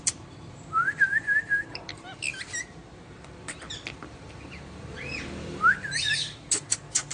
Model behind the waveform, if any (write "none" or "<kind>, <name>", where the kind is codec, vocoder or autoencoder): vocoder, BigVGAN v2